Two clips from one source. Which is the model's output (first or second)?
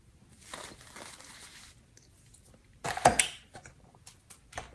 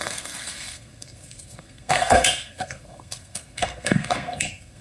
second